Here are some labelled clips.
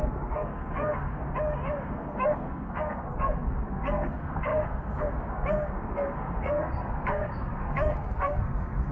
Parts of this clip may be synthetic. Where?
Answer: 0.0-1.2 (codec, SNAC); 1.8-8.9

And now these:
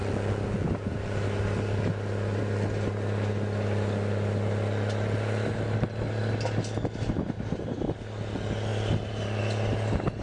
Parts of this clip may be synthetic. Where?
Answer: none

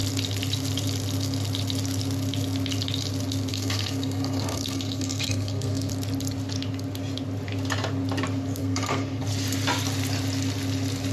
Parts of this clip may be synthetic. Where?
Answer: 3.5-5.9 (codec, SNAC); 8.6-9.2